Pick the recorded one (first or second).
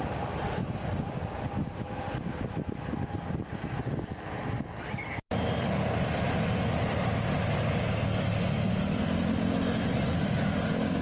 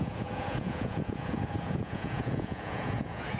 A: first